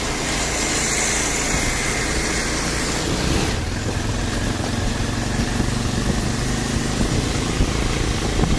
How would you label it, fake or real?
real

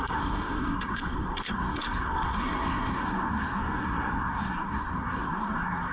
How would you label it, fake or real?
fake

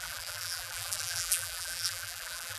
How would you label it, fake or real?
fake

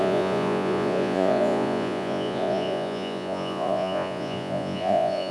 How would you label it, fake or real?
fake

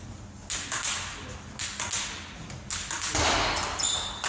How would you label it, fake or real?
real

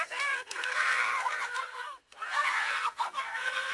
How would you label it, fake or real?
fake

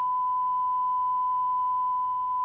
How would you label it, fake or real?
real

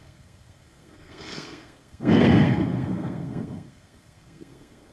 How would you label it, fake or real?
fake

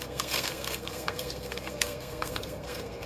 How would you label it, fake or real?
fake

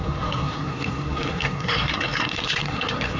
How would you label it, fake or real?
fake